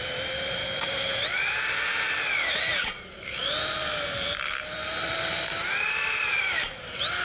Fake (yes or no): yes